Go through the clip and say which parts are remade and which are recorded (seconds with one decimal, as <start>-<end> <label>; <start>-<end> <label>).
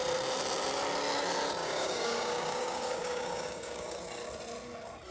0.0-1.6 recorded; 1.6-4.0 remade; 4.0-5.1 recorded